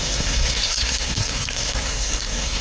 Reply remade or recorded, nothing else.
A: remade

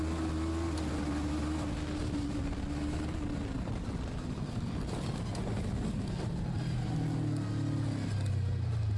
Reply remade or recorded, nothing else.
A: recorded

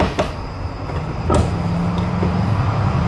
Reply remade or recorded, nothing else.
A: recorded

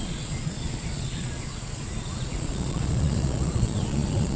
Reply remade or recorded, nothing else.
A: remade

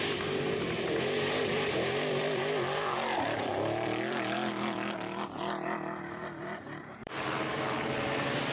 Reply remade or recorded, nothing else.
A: remade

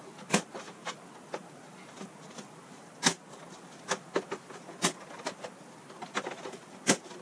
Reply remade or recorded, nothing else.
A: recorded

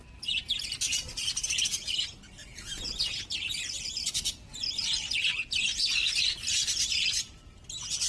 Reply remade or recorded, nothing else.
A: recorded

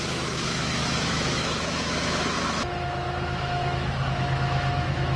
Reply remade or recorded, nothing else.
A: remade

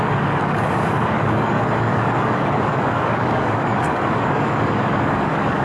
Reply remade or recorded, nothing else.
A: remade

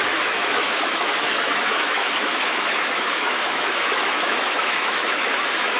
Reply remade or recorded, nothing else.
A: remade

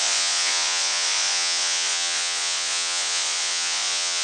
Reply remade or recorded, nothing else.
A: remade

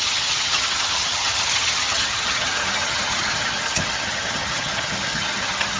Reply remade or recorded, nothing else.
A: remade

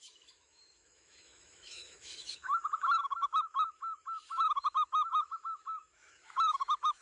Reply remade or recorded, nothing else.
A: remade